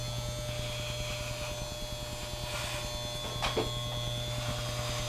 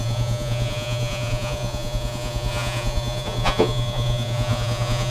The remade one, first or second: second